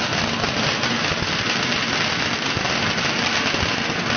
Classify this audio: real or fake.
real